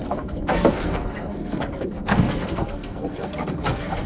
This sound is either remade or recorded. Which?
remade